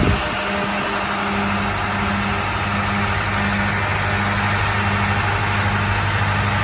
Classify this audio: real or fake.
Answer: real